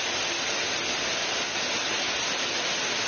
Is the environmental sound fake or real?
real